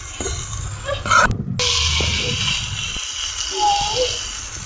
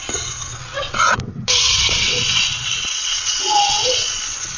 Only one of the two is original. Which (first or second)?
first